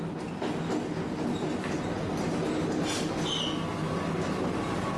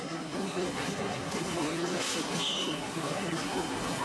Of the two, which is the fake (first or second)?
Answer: second